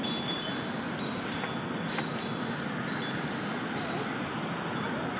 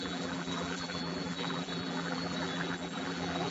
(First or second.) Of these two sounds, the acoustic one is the first